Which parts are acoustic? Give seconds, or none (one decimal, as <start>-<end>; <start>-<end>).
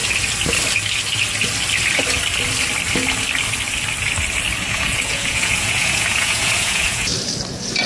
0.0-4.7; 7.1-7.9